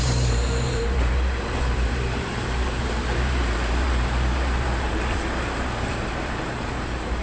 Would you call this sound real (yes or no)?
no